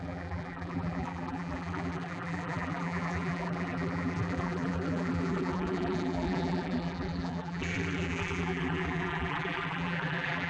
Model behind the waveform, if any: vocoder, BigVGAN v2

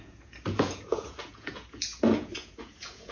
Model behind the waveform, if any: vocoder, Vocos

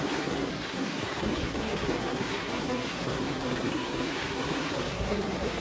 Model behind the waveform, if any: codec, SNAC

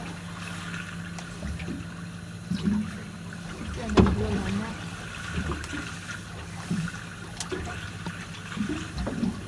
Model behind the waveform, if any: none